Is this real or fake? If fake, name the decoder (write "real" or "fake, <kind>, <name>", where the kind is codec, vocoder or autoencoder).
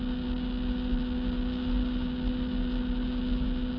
real